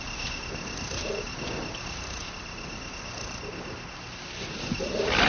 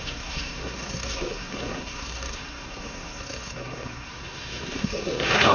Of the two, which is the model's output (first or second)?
second